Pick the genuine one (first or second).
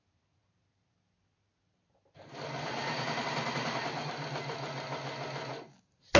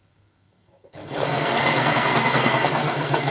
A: first